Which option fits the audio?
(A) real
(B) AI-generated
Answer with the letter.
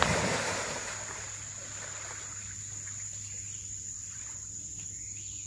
A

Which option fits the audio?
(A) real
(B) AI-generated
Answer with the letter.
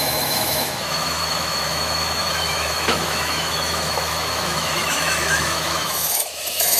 B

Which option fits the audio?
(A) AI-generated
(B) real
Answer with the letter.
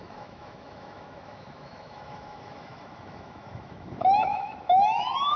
A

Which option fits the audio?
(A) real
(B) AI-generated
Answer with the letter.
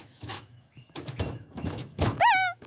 B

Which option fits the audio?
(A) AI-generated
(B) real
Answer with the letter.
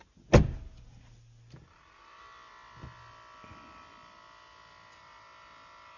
B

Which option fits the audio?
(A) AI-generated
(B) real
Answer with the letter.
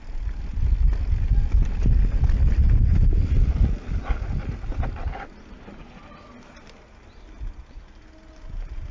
B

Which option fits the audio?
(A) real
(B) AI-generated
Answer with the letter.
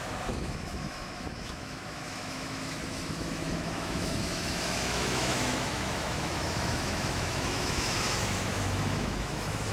B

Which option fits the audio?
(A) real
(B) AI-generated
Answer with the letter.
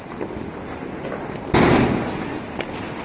A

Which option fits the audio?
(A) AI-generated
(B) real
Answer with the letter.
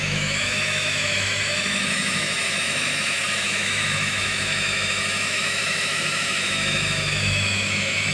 A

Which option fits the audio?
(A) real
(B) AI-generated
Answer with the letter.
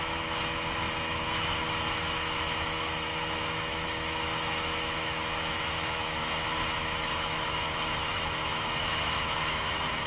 B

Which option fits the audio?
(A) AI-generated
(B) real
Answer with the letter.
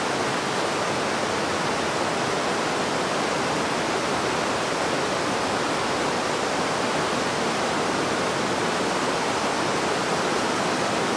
B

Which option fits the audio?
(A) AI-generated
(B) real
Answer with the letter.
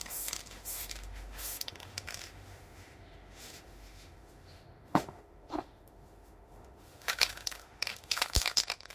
A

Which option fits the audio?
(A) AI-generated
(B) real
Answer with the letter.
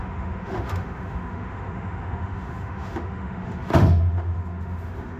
A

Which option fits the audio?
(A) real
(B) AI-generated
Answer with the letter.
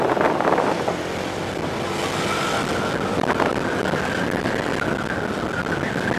A